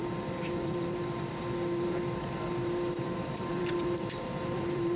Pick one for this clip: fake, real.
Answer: fake